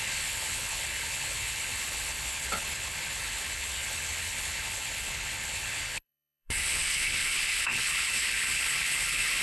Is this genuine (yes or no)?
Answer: no